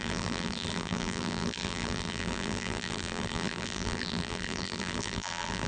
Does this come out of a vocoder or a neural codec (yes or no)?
yes